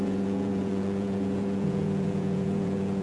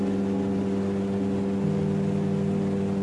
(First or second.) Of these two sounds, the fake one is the first